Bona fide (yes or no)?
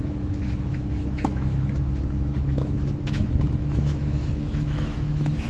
no